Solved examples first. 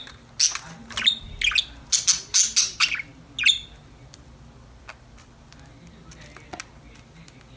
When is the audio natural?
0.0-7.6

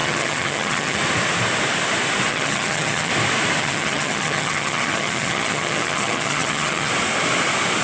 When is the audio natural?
1.0-2.3; 3.1-3.6; 6.9-7.8

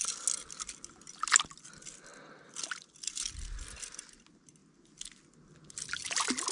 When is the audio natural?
0.0-6.5

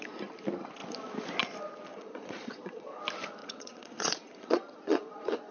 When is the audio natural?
0.0-1.9; 3.0-3.4

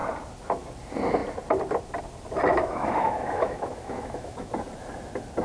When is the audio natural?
0.0-2.5; 4.5-5.4

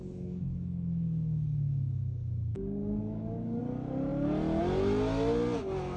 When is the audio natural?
3.6-6.0

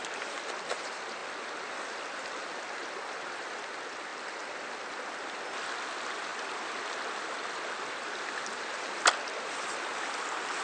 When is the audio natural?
0.0-10.6